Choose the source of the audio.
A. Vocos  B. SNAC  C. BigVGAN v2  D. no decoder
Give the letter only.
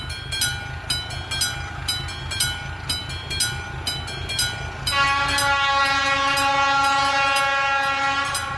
D